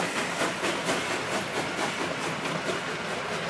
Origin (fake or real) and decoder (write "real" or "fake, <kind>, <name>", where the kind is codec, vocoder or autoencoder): real